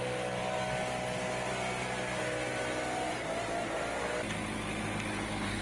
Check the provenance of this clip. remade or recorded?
recorded